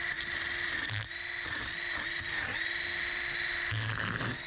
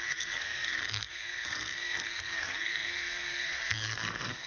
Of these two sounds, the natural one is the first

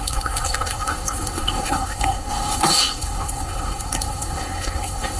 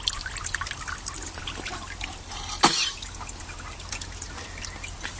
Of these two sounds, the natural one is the second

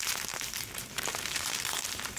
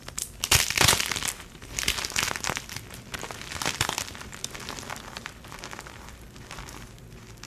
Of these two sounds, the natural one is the second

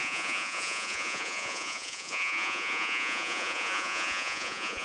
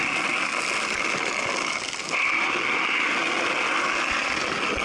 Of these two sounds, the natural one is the second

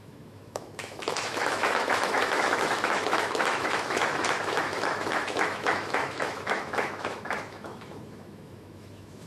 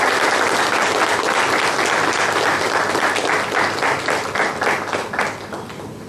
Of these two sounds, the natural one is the second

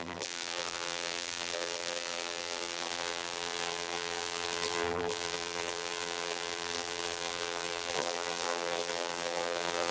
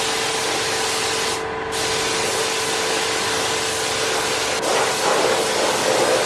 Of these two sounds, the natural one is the second